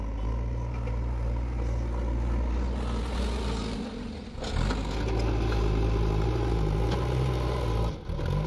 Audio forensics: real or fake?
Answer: real